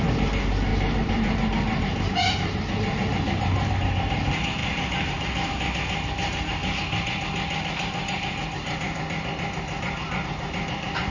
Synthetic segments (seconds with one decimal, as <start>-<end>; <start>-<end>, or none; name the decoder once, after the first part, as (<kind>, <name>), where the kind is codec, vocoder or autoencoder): 0.7-3.7 (vocoder, BigVGAN v2)